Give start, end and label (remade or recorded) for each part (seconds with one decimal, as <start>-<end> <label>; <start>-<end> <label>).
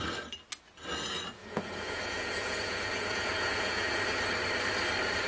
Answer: 0.0-1.4 recorded; 1.4-4.0 remade; 4.0-5.3 recorded